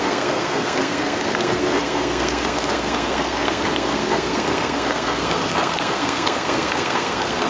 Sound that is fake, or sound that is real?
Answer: fake